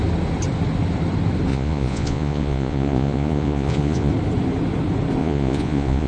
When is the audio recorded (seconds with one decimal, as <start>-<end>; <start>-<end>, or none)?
0.0-1.5; 4.1-5.2